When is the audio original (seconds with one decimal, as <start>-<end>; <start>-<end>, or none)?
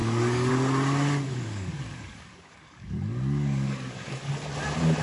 0.5-1.3; 4.3-5.0